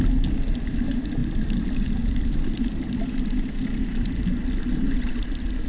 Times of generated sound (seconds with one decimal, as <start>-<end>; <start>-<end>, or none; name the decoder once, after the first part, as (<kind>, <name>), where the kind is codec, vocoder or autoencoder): none